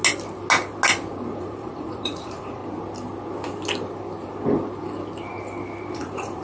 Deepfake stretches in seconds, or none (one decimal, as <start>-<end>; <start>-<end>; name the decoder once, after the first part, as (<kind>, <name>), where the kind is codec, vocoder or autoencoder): 1.1-2.6 (vocoder, Vocos); 5.9-6.4